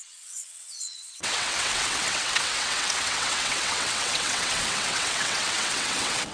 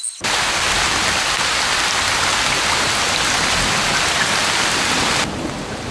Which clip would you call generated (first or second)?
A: first